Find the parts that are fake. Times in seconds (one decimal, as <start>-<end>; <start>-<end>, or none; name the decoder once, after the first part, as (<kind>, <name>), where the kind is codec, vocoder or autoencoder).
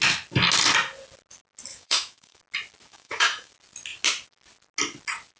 1.7-2.4 (autoencoder, DAC-VAE); 2.9-3.5